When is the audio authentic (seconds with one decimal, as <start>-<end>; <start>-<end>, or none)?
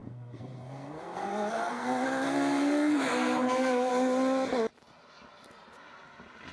3.9-6.5